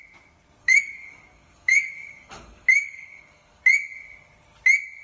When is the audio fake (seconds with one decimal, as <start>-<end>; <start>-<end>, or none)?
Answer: 0.6-3.6